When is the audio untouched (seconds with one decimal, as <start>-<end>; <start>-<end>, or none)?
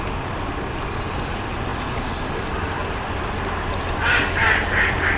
0.0-5.2